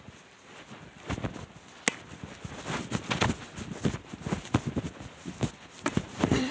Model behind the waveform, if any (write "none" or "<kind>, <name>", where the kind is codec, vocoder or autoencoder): none